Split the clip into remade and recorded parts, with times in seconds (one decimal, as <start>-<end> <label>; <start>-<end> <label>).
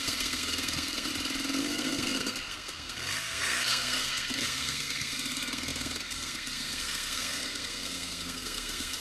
0.0-1.1 remade; 1.1-1.6 recorded; 1.6-9.0 remade